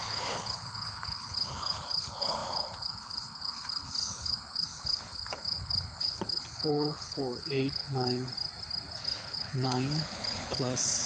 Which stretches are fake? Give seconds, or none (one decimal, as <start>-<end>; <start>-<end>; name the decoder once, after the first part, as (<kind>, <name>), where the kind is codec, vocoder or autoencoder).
0.0-8.3 (codec, HILCodec); 9.0-11.1